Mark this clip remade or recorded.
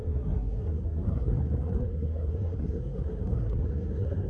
remade